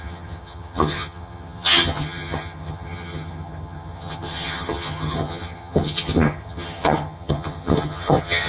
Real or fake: fake